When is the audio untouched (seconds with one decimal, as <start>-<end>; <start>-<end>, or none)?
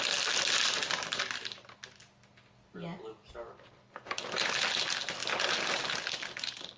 0.0-6.8